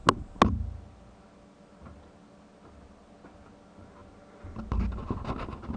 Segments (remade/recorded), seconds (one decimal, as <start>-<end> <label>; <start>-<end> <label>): 0.0-5.8 recorded